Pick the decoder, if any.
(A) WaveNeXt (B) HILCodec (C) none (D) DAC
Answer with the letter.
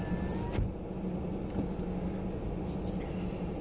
C